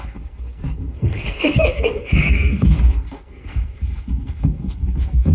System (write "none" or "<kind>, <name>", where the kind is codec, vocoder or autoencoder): codec, SNAC